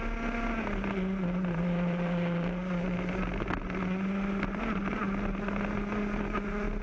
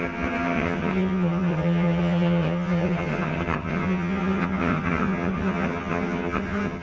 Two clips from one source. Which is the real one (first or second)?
first